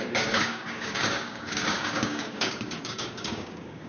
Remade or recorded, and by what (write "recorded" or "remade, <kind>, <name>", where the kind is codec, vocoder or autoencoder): remade, codec, DAC